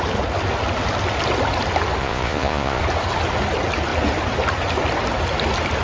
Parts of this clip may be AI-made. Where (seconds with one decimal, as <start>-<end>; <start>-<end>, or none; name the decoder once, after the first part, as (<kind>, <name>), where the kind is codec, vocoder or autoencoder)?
2.0-2.8 (vocoder, Vocos)